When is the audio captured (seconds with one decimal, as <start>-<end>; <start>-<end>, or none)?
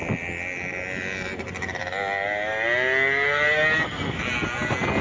0.0-5.0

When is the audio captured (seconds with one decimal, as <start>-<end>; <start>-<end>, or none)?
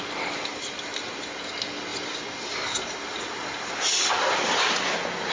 0.0-0.5; 1.2-1.9